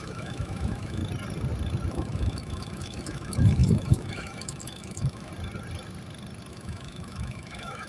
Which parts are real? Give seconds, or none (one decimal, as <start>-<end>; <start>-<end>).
1.0-1.9; 5.3-6.5